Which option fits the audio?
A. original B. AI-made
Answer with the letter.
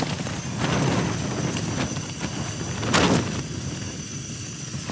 A